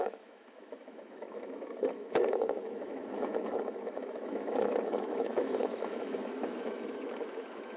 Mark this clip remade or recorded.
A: remade